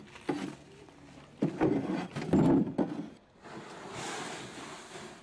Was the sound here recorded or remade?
recorded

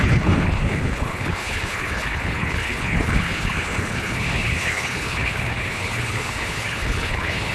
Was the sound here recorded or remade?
remade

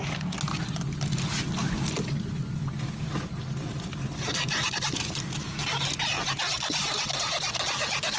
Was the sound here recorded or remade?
recorded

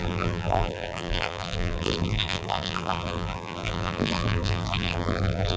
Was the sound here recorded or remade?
remade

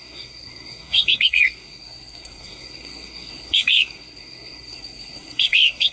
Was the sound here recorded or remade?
remade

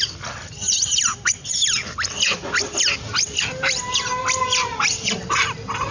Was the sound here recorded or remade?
recorded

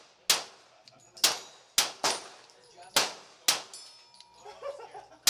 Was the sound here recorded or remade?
recorded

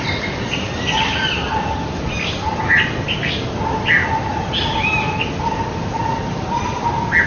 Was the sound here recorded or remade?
recorded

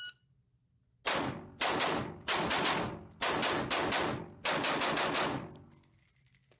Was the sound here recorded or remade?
recorded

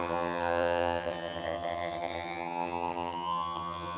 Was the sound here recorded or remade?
remade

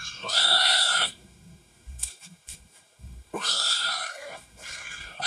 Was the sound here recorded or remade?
remade